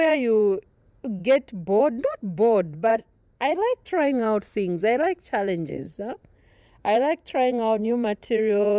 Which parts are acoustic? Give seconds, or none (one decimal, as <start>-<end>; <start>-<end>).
1.2-1.8

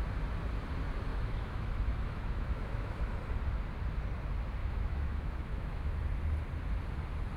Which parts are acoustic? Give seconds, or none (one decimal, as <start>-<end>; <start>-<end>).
0.0-1.1; 3.0-4.6; 6.0-7.4

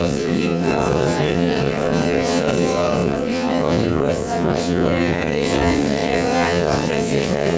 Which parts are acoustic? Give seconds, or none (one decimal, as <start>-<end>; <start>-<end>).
none

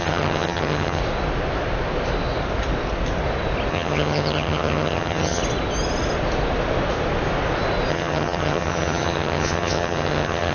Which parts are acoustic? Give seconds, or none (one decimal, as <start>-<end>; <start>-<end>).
1.0-3.7; 5.4-7.9